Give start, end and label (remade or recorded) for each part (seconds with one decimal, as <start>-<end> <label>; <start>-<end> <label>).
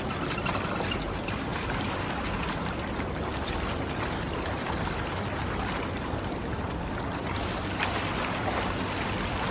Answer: 0.0-1.5 remade; 1.5-5.8 recorded; 5.8-9.5 remade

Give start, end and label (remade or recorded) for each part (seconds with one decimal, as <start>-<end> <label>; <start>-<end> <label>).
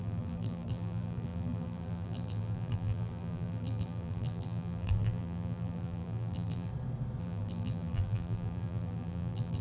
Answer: 0.0-6.7 remade; 6.7-7.2 recorded; 7.2-9.6 remade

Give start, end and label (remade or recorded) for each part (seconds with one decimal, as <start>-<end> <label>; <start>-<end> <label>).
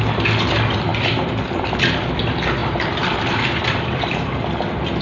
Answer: 0.0-0.9 recorded; 0.9-1.7 remade; 1.7-2.6 recorded; 2.6-4.6 remade; 4.6-5.0 recorded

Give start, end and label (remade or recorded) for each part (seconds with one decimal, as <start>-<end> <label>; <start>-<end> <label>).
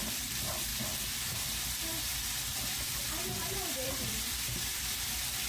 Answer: 0.0-5.5 remade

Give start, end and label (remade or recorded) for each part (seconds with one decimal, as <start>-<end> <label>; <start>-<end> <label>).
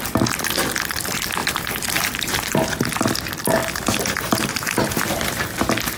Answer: 0.0-1.4 recorded; 1.4-2.8 remade; 2.8-3.6 recorded; 3.6-5.0 remade; 5.0-6.0 recorded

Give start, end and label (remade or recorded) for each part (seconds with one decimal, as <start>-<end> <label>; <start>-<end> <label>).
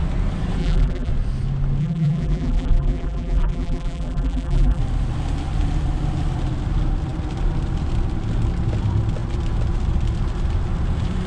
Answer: 0.0-0.6 recorded; 0.6-1.1 remade; 1.1-1.8 recorded; 1.8-4.8 remade; 4.8-11.3 recorded